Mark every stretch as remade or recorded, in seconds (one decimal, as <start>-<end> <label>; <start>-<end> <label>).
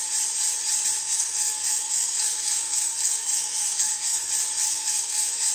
0.0-1.0 recorded; 1.0-4.3 remade; 4.3-4.7 recorded; 4.7-5.5 remade